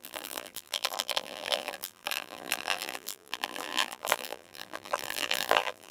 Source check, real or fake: fake